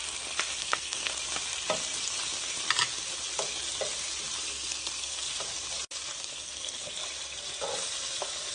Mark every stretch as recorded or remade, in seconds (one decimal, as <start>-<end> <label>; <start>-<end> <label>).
0.0-0.6 recorded; 0.6-1.1 remade; 1.1-4.5 recorded; 4.5-5.3 remade; 5.3-6.2 recorded; 6.2-7.0 remade; 7.0-8.5 recorded